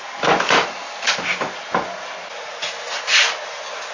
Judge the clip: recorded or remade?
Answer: recorded